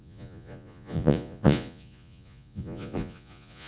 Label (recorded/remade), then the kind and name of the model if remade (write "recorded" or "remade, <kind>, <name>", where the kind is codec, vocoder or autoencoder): remade, vocoder, Vocos